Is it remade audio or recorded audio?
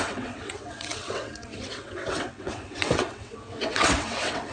remade